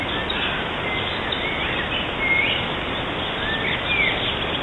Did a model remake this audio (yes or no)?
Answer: no